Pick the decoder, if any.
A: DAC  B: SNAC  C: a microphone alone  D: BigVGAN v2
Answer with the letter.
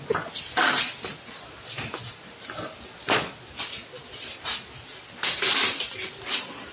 C